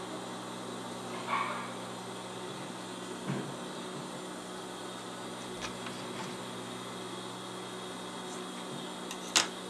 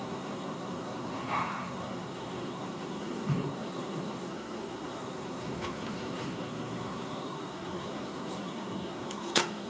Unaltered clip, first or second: first